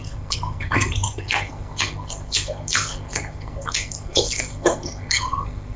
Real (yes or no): no